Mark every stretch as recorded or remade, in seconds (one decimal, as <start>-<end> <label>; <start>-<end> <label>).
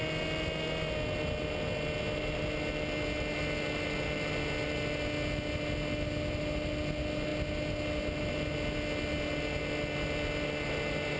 0.0-11.2 recorded